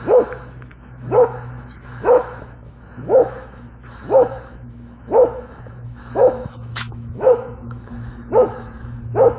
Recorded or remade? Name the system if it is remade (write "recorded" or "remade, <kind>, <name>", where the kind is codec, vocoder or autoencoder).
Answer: remade, autoencoder, DAC-VAE